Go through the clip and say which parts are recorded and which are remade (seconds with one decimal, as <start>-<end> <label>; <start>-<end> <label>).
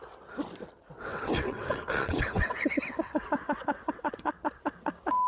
0.0-1.1 recorded; 1.1-4.3 remade; 4.3-5.3 recorded